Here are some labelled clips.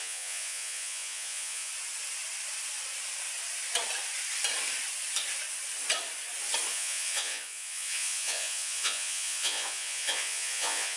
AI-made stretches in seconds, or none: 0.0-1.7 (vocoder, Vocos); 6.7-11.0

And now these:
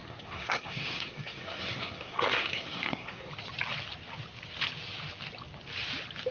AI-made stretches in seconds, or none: 0.0-3.3 (codec, SNAC)

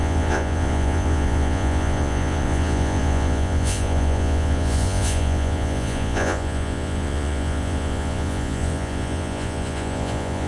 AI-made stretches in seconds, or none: 0.0-10.5 (vocoder, Vocos)

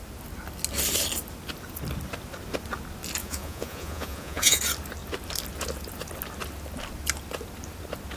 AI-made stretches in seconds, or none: 3.2-4.6 (vocoder, Vocos)

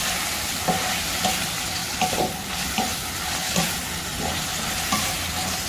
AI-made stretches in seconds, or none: 0.0-1.8 (vocoder, BigVGAN v2); 2.4-2.9